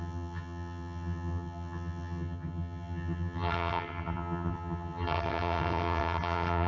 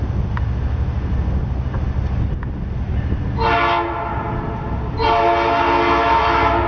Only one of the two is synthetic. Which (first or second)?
first